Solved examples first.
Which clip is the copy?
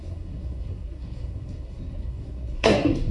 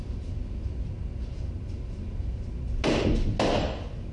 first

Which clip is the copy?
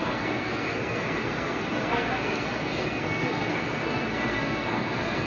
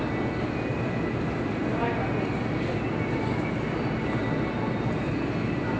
first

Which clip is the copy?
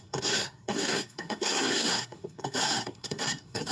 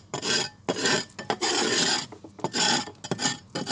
first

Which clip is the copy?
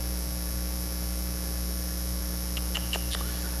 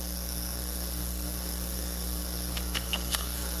second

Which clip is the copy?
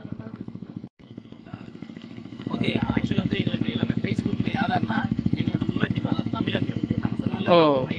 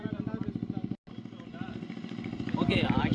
first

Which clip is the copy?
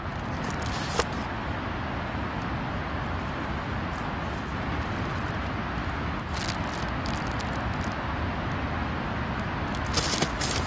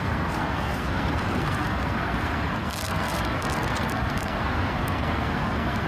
second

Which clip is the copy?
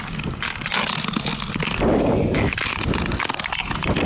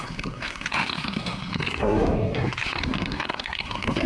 second